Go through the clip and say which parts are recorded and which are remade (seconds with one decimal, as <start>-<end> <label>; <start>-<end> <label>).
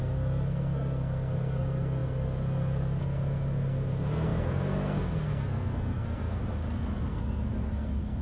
0.0-6.4 remade; 6.4-7.1 recorded; 7.1-8.2 remade